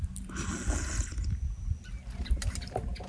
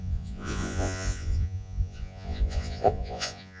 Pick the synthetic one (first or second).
second